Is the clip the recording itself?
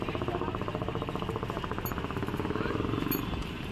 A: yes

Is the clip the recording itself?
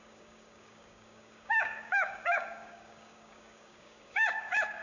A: no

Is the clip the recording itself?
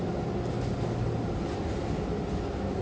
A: yes